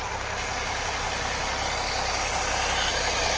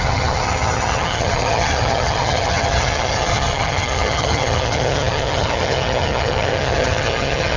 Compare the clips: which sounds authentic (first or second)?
first